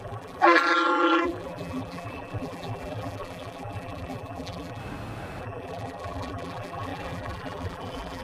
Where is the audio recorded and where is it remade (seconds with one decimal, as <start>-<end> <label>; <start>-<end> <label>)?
0.0-4.8 remade; 4.8-5.4 recorded; 5.4-8.2 remade